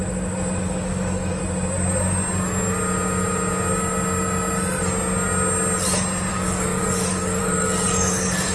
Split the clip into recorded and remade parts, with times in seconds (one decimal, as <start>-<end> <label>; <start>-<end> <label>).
0.0-0.6 recorded; 0.6-1.4 remade; 1.4-6.3 recorded; 6.3-8.5 remade